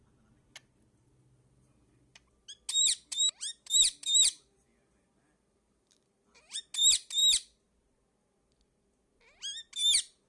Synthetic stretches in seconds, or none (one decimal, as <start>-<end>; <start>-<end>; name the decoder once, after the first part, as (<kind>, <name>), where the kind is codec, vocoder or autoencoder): 2.8-6.6 (vocoder, BigVGAN v2)